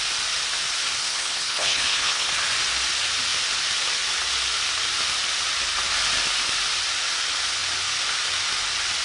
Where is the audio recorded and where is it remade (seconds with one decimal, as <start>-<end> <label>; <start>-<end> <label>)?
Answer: 0.0-1.0 recorded; 1.0-2.3 remade; 2.3-9.0 recorded